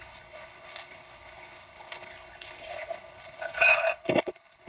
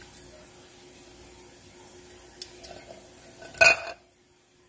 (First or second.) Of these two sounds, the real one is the second